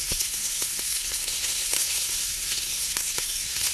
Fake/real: fake